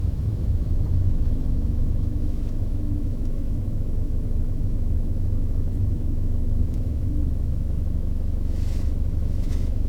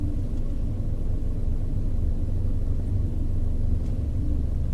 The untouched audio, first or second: second